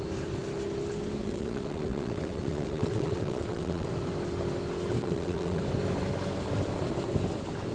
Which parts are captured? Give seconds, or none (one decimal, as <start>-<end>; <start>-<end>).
0.0-1.2; 3.9-5.0; 5.6-7.7